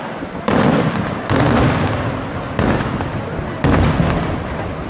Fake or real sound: real